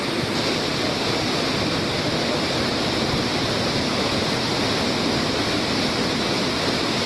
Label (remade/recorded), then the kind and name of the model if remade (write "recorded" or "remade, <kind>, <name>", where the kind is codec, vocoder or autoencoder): recorded